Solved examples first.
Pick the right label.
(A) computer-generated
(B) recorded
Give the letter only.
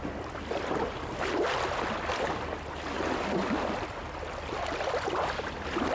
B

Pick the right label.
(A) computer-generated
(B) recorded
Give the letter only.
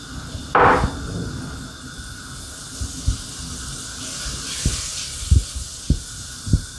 B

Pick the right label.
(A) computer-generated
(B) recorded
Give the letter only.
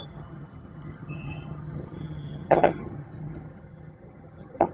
A